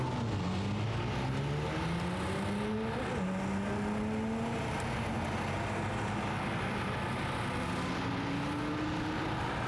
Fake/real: real